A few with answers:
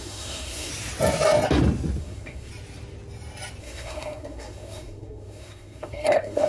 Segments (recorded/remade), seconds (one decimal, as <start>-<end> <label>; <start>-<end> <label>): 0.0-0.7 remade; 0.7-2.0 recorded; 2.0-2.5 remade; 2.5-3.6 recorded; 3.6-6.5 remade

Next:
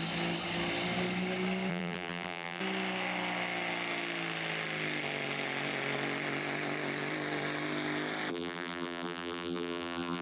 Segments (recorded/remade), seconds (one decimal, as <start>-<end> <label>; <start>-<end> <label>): 0.0-1.7 recorded; 1.7-2.6 remade; 2.6-8.3 recorded; 8.3-10.2 remade

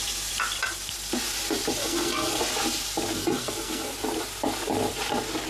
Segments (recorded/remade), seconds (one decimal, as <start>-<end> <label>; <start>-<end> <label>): 0.0-1.8 recorded; 1.8-2.4 remade; 2.4-3.2 recorded; 3.2-3.9 remade; 3.9-5.5 recorded